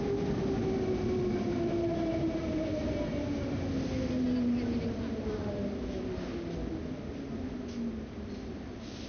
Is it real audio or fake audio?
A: real